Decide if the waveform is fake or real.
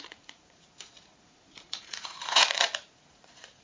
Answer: fake